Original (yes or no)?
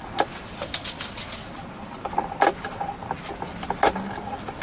yes